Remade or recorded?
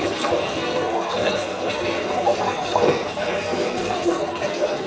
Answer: remade